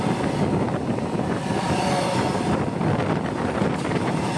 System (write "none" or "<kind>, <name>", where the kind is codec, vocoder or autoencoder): none